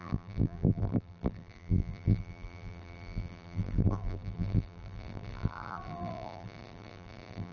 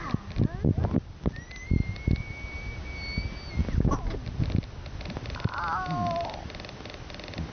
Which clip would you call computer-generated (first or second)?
first